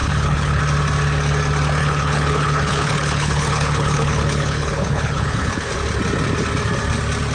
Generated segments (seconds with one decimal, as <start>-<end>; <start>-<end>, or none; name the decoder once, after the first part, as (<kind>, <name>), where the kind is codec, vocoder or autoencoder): 0.0-0.6 (codec, HILCodec); 1.8-5.7